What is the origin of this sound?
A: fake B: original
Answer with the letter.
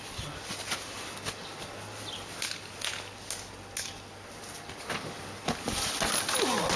B